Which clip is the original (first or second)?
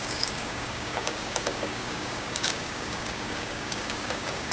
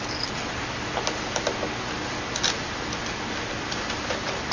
second